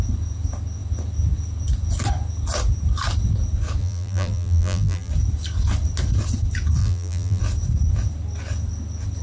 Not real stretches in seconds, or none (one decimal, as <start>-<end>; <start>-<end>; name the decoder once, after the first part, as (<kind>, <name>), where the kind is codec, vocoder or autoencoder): 3.8-5.1 (vocoder, BigVGAN v2); 6.8-7.4